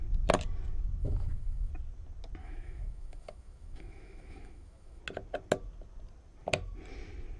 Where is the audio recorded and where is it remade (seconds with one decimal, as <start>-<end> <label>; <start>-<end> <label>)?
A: 0.0-1.0 recorded; 1.0-1.7 remade; 1.7-2.4 recorded; 2.4-5.0 remade; 5.0-7.4 recorded